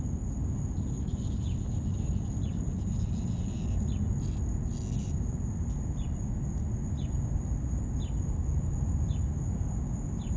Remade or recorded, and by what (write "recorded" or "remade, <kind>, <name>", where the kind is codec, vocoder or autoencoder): recorded